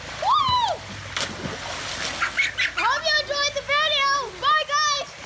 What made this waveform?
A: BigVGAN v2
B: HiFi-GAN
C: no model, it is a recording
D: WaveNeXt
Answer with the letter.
C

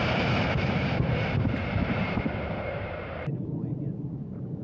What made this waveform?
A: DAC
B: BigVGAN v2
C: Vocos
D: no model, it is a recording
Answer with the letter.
B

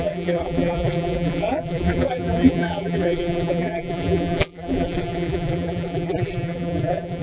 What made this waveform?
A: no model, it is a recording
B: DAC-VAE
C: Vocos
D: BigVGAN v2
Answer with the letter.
D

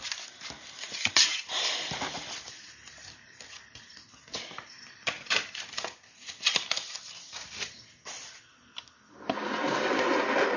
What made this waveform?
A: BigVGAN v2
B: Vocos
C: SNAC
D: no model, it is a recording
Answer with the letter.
A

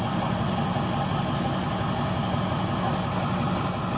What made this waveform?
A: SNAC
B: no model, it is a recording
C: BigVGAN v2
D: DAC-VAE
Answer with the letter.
B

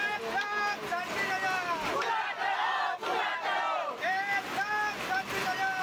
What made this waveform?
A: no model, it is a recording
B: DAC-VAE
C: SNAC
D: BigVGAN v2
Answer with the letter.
A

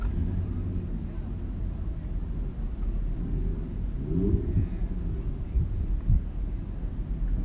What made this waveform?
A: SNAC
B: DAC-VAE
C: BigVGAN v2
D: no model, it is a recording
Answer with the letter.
D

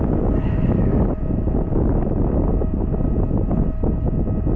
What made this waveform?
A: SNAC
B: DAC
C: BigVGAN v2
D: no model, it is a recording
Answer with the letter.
D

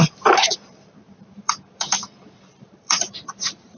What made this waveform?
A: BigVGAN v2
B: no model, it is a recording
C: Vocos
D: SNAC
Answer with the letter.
A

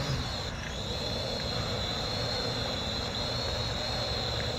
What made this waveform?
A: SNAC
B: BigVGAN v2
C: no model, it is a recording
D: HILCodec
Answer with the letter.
C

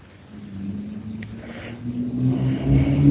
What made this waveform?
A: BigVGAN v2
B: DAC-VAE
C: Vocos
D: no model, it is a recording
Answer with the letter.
D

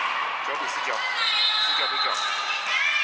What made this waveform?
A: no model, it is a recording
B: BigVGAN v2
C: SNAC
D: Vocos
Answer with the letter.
A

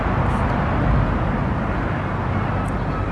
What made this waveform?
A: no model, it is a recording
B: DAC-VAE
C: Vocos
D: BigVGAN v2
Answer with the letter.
A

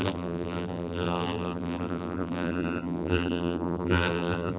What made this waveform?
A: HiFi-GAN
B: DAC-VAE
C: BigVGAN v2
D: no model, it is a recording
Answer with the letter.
C